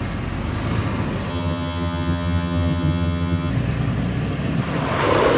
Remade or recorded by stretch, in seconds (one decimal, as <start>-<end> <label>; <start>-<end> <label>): 0.0-1.3 recorded; 1.3-3.5 remade; 3.5-5.4 recorded